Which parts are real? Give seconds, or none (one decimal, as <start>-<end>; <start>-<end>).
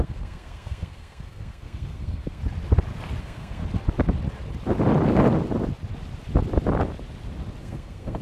2.4-3.2; 3.6-7.6